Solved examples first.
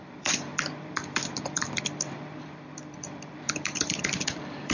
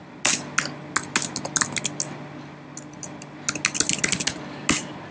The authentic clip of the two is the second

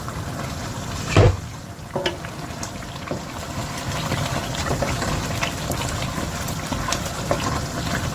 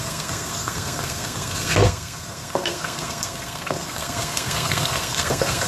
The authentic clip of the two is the first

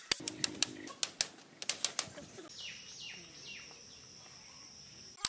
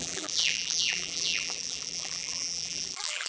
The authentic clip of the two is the first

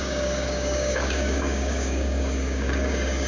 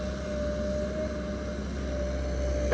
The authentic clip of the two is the second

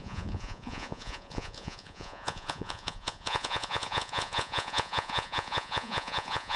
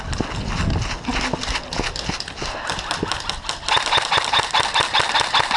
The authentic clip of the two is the second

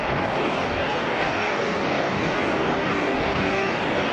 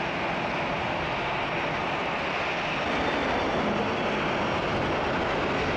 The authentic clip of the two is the second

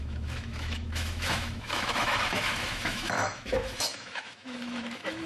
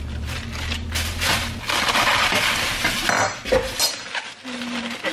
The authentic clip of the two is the second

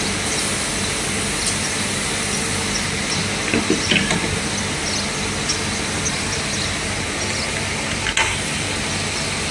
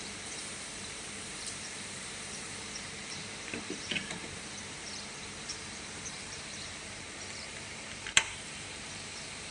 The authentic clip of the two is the first